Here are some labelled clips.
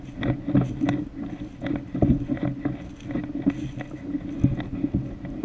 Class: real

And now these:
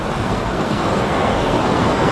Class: fake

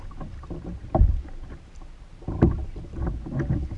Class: real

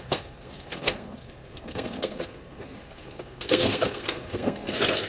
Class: fake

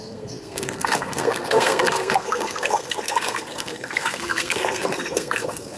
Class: fake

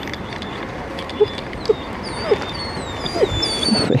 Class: real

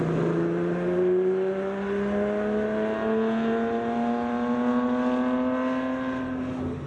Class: real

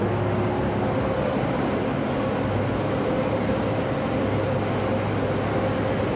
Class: real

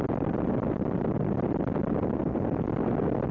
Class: real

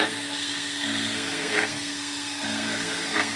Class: fake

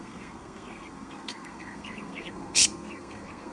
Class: fake